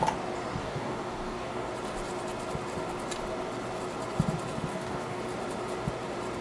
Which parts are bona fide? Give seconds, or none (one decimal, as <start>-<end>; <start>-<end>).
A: 0.0-0.6; 1.7-4.7; 5.2-6.4

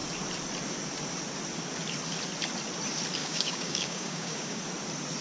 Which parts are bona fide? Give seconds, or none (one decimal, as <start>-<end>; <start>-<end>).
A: 0.0-3.2; 4.6-5.2

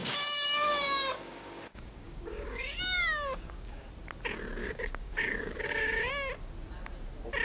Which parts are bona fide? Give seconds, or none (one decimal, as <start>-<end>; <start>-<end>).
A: 3.9-4.6; 6.1-7.4

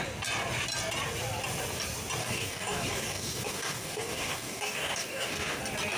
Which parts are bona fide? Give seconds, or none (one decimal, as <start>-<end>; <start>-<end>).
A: 0.0-2.2; 5.6-6.0

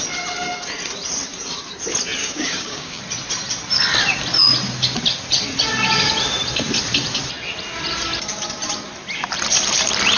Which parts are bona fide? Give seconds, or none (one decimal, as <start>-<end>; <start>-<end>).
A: 0.0-2.2; 3.0-10.2

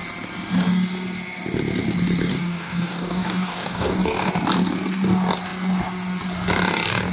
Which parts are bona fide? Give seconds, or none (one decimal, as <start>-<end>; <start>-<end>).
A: 0.0-2.3; 4.3-7.1